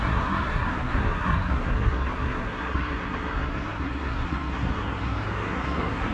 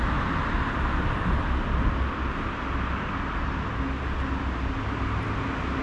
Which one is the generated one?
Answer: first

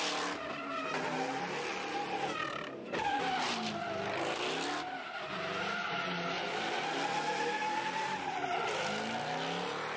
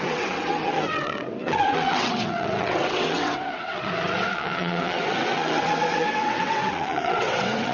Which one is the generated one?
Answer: second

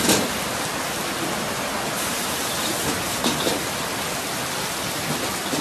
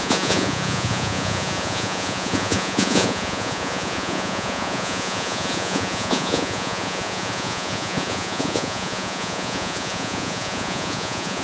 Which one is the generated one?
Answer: second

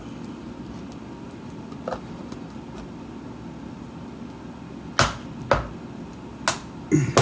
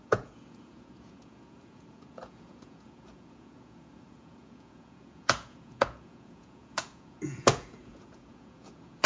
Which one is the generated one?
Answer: second